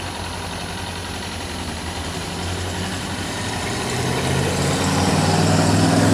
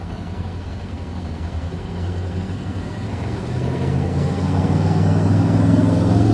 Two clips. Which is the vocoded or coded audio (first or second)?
second